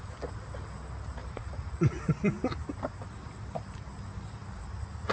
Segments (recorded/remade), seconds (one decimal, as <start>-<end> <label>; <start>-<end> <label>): 0.0-1.2 recorded; 1.2-2.0 remade; 2.0-5.1 recorded